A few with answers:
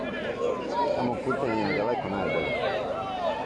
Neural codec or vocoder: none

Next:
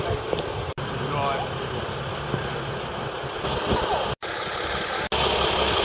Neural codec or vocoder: none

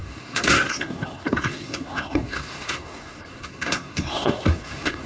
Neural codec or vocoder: codec, SNAC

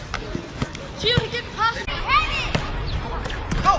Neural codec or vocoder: none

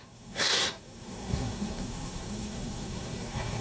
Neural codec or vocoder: codec, SNAC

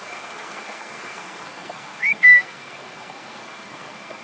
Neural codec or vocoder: codec, SNAC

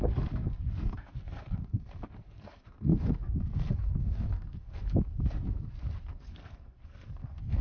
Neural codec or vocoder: codec, SNAC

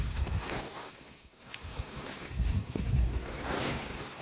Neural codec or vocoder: codec, SNAC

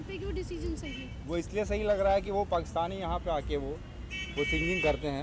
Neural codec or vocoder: none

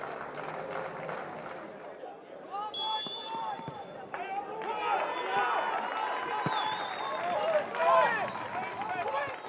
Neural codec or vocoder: none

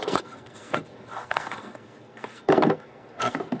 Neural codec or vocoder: codec, SNAC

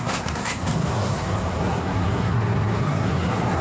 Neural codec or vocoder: codec, SNAC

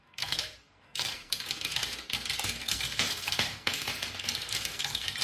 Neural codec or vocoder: codec, SNAC